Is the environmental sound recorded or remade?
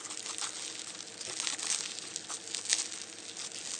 recorded